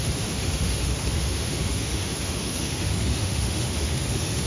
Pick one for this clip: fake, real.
fake